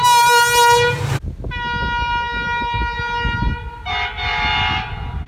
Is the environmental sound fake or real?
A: real